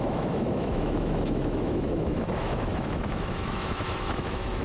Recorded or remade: remade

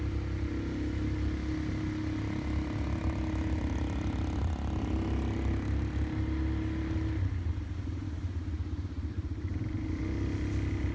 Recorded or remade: recorded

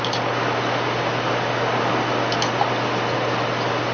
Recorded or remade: recorded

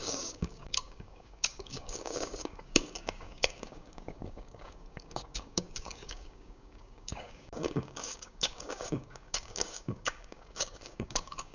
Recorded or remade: remade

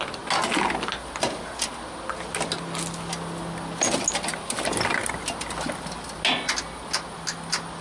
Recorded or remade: recorded